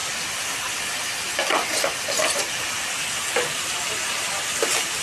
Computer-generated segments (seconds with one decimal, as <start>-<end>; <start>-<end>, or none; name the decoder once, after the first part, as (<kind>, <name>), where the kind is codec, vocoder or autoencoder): none